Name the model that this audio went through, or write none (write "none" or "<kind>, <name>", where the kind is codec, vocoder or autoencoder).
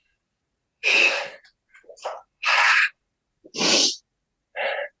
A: vocoder, Vocos